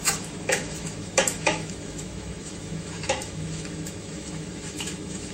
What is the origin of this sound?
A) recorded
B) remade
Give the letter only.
B